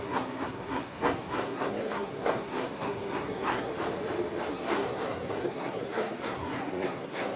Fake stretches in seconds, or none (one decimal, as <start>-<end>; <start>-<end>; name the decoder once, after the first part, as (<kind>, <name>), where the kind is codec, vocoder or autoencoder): 0.0-3.7 (codec, SNAC); 4.5-7.4